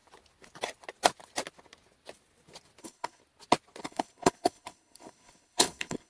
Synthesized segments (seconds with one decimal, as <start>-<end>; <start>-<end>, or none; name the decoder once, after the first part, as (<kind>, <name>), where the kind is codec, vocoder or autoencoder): 2.8-3.2 (codec, HILCodec); 3.8-6.1